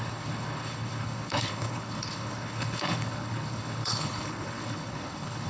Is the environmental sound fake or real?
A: fake